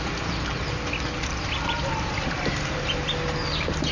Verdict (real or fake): real